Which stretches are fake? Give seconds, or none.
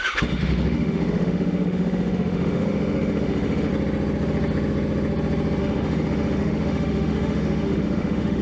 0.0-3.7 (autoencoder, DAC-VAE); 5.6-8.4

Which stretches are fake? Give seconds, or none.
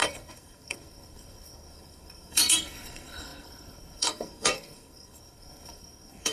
0.0-6.3 (codec, SNAC)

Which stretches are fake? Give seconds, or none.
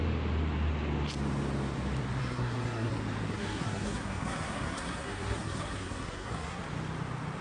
2.2-2.9 (codec, SNAC); 3.3-6.6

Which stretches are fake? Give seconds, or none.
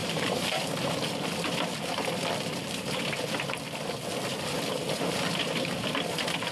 0.0-0.7 (vocoder, BigVGAN v2)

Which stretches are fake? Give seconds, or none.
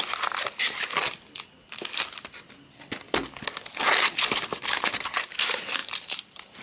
5.8-6.6 (vocoder, BigVGAN v2)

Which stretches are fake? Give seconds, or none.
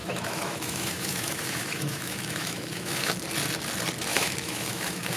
0.0-3.1 (autoencoder, DAC-VAE); 4.1-5.2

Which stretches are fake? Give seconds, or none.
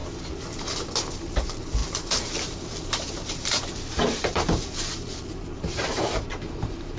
1.1-7.0 (vocoder, BigVGAN v2)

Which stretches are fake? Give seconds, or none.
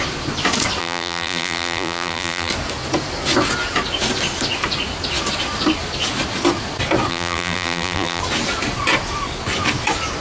0.8-2.5 (vocoder, BigVGAN v2); 7.1-8.2